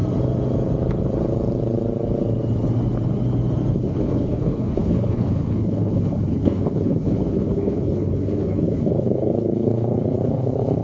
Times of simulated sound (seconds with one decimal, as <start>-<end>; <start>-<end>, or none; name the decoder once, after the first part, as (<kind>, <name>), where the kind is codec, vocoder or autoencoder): 3.7-10.8 (codec, HILCodec)